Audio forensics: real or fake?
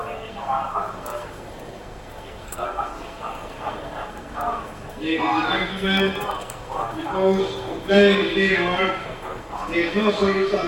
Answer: fake